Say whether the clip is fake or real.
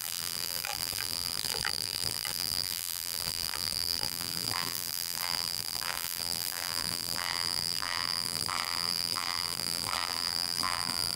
fake